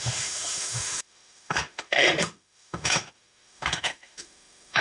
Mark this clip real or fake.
fake